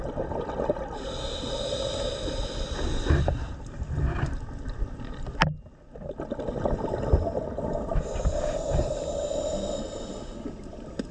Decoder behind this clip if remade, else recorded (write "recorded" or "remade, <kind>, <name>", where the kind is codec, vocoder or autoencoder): recorded